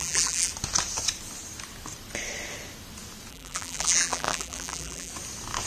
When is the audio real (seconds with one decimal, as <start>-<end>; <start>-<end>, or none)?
0.5-3.3; 5.1-5.7

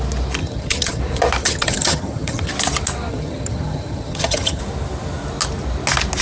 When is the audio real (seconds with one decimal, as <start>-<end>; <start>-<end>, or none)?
0.0-0.4; 1.0-1.4; 2.5-3.1; 4.6-6.2

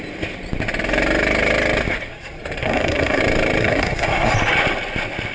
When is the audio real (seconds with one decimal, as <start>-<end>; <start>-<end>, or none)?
0.0-2.1; 3.2-3.6; 4.3-5.3

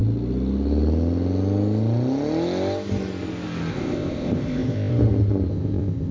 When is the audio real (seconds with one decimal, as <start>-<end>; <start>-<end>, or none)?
0.0-3.7; 4.9-5.5

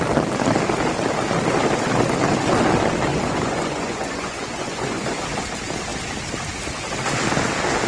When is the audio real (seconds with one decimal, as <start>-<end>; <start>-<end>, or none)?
0.0-3.1; 5.2-7.9

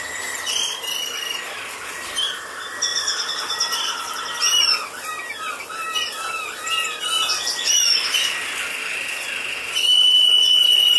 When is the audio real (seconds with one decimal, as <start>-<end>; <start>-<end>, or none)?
0.0-11.0

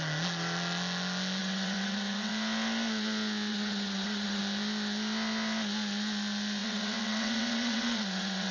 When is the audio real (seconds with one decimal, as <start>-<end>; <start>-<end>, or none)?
0.0-1.4; 2.3-3.5; 4.4-6.6

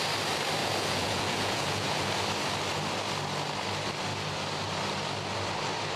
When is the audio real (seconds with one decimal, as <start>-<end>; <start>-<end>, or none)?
0.0-0.6; 2.1-6.0